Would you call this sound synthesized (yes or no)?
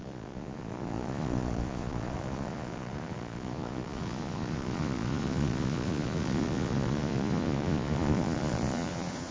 yes